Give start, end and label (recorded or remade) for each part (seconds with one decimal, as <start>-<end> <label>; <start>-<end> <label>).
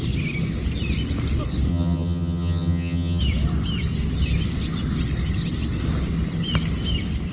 0.0-1.7 recorded; 1.7-3.2 remade; 3.2-7.3 recorded